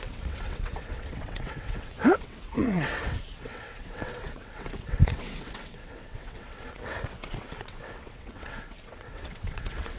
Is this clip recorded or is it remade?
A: remade